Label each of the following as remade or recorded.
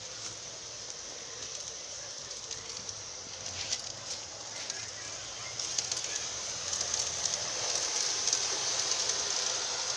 recorded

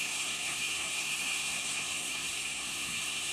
remade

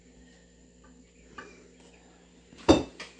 recorded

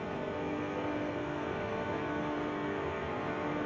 remade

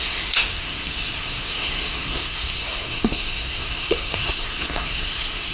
remade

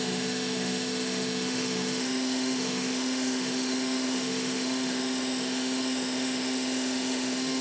remade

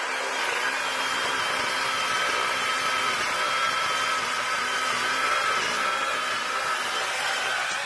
recorded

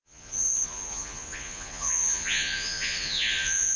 remade